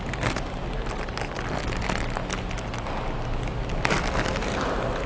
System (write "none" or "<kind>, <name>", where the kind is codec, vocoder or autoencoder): none